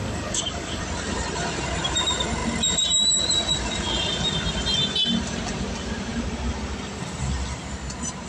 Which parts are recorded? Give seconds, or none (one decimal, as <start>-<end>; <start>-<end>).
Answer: 0.8-8.3

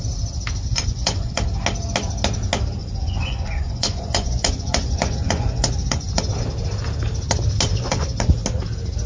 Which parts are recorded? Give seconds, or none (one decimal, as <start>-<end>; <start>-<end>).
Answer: 0.0-0.7; 1.4-2.8; 6.3-7.7; 8.3-9.1

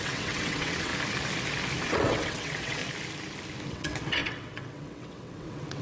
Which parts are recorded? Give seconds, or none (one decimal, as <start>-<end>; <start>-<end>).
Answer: 0.9-1.8; 2.8-3.7

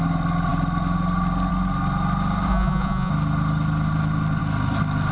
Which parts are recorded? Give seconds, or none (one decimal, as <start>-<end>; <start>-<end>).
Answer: 0.0-2.5; 3.1-5.1

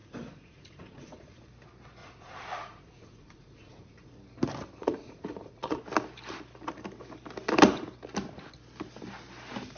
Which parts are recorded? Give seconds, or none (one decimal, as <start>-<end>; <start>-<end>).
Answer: 1.4-2.0; 4.1-4.8; 5.8-9.8

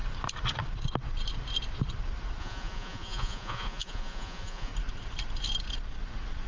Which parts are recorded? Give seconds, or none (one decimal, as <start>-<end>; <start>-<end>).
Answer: 0.0-2.4; 4.7-6.5